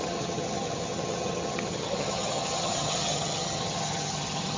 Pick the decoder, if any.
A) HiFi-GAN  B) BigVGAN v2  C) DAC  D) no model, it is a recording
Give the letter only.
A